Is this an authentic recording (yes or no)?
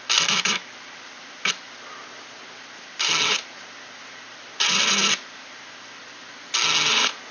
yes